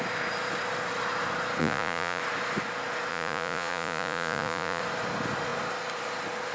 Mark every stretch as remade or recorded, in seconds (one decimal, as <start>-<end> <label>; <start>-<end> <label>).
0.0-1.6 recorded; 1.6-2.2 remade; 2.2-3.1 recorded; 3.1-4.8 remade; 4.8-6.5 recorded